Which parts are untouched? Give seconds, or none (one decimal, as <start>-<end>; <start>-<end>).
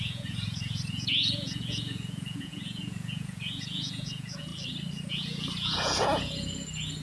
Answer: 4.5-5.1